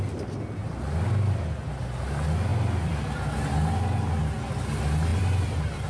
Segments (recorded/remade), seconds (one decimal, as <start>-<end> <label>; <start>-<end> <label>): 0.0-2.5 recorded; 2.5-3.5 remade; 3.5-5.1 recorded; 5.1-5.9 remade